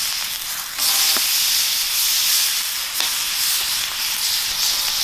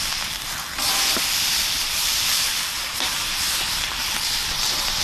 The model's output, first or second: second